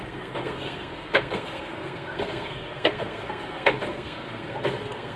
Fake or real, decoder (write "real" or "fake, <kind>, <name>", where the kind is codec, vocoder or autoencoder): fake, codec, SNAC